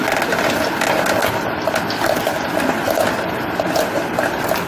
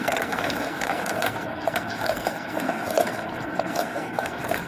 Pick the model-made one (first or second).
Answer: second